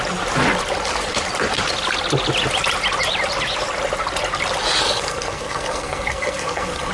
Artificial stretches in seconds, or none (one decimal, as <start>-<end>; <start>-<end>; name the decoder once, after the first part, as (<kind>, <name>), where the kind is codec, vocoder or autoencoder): 4.8-6.9 (codec, SNAC)